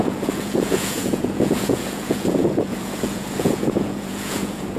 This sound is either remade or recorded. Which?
remade